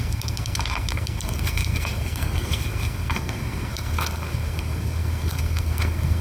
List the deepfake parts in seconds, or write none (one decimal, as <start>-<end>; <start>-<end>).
0.0-6.2